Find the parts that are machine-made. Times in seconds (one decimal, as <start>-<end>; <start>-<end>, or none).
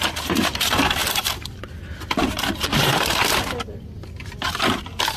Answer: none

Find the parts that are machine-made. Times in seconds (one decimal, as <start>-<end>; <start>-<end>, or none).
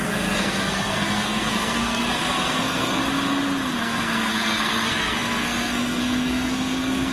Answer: 0.0-3.0; 3.8-7.1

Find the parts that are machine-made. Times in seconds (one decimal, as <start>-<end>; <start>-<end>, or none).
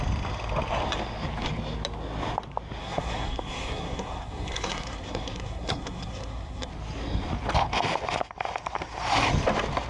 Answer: 2.8-6.7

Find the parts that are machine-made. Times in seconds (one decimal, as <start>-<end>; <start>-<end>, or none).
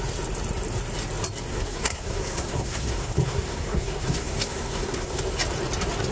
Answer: 1.5-5.2